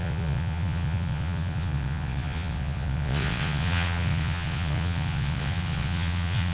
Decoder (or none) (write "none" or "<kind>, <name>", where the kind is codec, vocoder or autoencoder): vocoder, Vocos